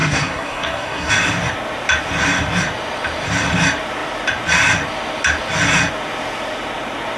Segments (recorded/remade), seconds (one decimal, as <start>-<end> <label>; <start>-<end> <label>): 0.0-1.1 remade; 1.1-7.2 recorded